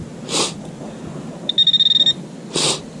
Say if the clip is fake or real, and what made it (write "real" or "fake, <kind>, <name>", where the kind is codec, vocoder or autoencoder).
real